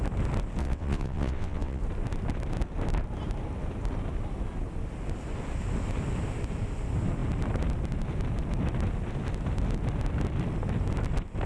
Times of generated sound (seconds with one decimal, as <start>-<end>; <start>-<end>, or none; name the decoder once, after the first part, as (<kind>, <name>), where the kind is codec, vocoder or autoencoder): 0.6-1.8 (vocoder, WaveNeXt)